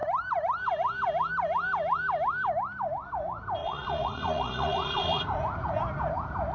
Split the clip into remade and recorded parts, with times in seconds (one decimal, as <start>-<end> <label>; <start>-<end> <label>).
0.0-3.6 recorded; 3.6-5.2 remade; 5.2-6.5 recorded